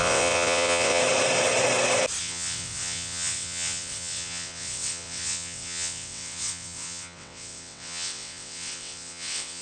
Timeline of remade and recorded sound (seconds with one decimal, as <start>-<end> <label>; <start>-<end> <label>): 0.0-1.0 remade; 1.0-2.2 recorded; 2.2-9.6 remade